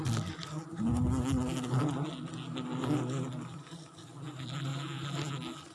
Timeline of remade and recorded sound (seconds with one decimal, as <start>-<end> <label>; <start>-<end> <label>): 0.0-5.7 recorded